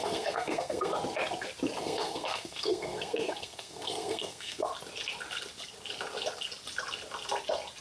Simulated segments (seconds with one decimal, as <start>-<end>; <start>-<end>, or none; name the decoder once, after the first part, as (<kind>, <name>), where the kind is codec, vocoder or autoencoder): 0.0-0.9 (codec, SNAC); 1.8-4.7